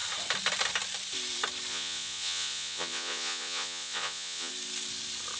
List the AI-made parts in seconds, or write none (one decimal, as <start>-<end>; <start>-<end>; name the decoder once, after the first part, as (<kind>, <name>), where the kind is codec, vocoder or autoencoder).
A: 1.7-4.5 (vocoder, Vocos)